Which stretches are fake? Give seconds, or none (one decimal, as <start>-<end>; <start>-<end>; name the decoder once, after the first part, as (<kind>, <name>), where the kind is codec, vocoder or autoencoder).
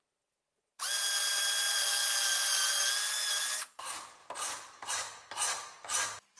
4.2-4.9 (vocoder, BigVGAN v2)